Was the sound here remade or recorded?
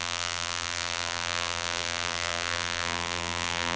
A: remade